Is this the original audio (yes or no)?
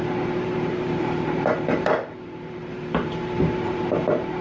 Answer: no